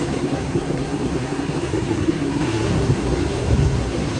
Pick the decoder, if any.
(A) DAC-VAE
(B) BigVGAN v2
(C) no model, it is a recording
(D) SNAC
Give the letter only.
D